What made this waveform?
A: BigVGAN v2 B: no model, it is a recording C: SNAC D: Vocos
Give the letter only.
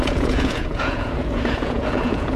D